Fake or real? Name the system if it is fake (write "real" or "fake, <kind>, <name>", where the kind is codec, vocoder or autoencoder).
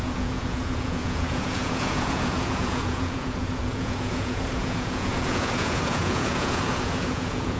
fake, vocoder, Vocos